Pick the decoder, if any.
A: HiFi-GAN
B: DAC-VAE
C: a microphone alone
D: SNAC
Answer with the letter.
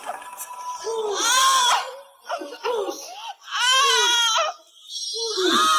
C